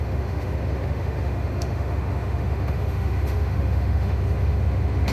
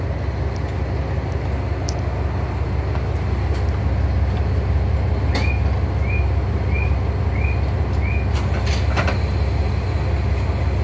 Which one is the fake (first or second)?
first